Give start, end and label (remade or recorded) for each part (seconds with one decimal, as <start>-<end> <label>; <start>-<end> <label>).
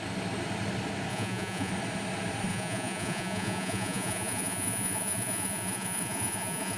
0.0-1.1 recorded; 1.1-1.7 remade; 1.7-2.5 recorded; 2.5-6.8 remade